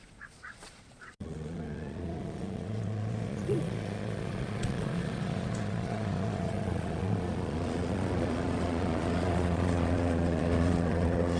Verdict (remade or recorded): remade